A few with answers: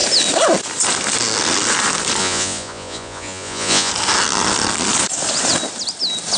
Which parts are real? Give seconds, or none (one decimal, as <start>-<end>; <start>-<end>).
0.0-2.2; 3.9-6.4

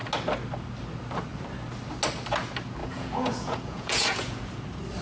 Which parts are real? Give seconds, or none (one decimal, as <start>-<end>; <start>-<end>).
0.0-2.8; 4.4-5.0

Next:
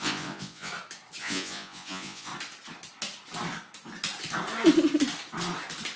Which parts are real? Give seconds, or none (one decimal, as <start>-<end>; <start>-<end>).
0.7-1.2; 2.3-6.0

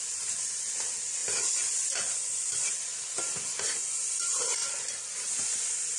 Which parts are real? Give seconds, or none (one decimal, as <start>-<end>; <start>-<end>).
0.0-6.0

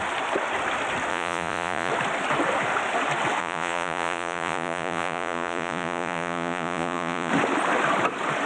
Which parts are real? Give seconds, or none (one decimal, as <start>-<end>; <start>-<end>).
0.0-1.1; 1.9-3.4; 7.3-8.5

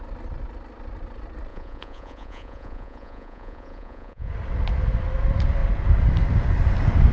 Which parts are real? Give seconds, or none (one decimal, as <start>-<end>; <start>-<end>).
0.0-1.5; 4.3-7.1

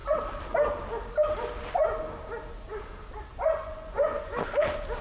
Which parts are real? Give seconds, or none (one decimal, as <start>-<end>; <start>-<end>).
0.0-3.3; 4.5-5.0